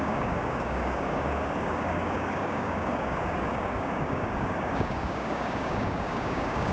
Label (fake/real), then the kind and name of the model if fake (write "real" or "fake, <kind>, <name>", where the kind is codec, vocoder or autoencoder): fake, codec, DAC